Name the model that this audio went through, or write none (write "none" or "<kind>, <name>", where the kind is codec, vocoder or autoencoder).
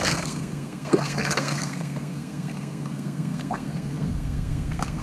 codec, SNAC